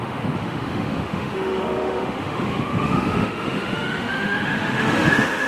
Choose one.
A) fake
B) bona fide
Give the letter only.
A